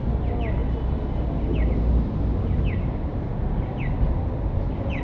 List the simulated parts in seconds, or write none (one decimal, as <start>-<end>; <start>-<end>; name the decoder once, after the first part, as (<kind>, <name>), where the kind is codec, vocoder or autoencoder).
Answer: none